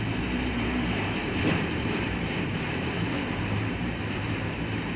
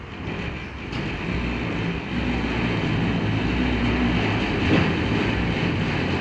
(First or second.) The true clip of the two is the second